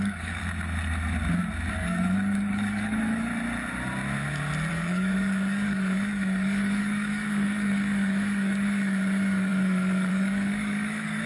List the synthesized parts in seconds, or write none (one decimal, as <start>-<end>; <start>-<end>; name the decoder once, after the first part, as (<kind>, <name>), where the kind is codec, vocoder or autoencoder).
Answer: 0.0-0.4 (codec, DAC); 1.7-3.3; 4.7-11.3